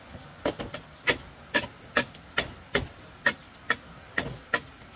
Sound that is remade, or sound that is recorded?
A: recorded